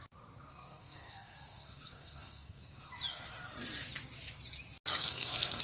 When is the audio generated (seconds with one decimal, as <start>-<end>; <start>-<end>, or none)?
0.5-2.9; 4.9-5.6